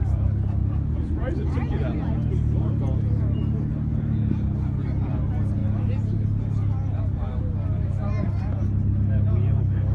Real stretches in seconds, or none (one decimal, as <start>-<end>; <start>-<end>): 0.0-9.9